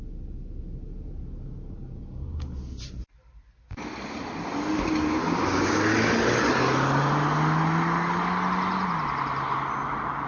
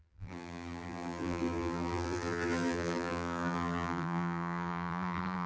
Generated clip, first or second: second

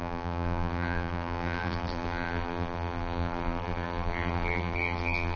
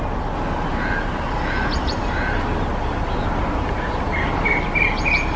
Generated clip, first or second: first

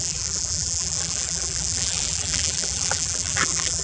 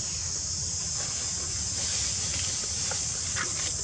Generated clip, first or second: first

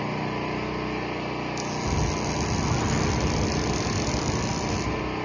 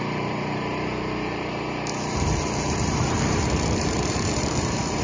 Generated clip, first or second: second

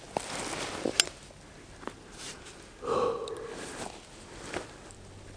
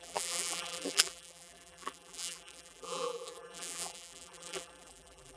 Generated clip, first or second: second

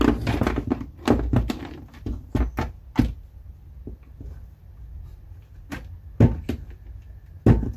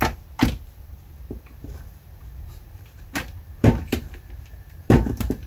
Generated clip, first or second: second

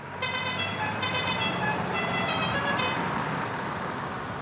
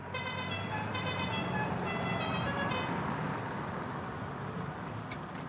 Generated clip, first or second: first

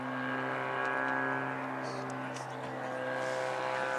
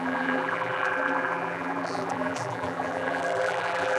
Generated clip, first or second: second